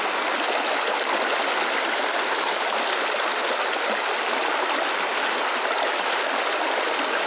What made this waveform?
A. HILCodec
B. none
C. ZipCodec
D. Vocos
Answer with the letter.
B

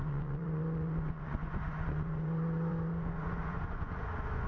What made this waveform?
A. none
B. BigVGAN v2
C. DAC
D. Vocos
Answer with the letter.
D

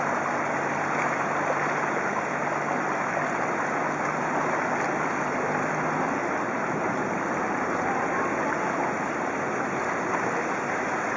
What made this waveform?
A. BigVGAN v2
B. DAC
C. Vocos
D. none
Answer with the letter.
D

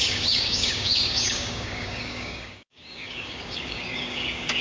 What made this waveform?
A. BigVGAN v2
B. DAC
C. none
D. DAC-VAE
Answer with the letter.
B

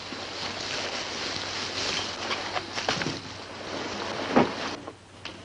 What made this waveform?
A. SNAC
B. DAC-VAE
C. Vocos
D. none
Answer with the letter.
D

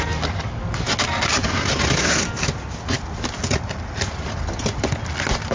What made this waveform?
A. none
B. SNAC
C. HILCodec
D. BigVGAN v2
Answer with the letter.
A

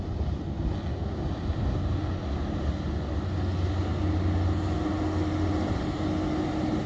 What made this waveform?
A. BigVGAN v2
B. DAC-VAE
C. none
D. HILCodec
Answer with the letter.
C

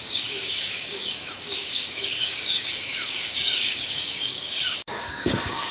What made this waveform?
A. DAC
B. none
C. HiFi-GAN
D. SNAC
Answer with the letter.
A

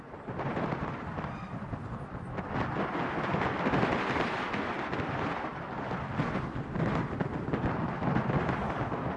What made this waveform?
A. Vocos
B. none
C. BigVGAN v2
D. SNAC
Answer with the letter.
B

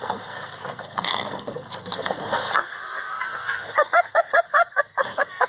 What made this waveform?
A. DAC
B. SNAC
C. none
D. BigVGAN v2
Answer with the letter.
B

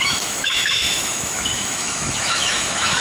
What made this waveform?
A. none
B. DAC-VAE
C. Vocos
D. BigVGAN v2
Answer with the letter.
B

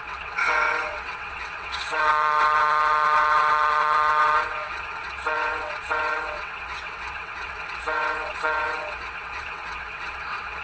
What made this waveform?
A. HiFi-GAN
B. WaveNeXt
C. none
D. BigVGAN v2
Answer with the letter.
B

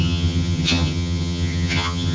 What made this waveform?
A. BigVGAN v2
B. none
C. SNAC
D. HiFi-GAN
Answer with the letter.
D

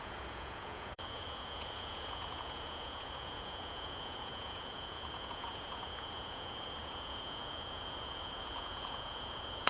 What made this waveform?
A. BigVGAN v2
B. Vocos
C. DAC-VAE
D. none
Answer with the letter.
B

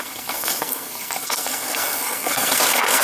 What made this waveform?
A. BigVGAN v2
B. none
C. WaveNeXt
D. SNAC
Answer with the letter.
D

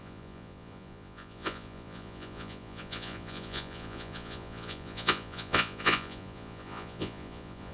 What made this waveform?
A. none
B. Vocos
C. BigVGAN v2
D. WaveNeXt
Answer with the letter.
B